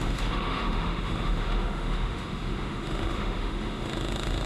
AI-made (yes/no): yes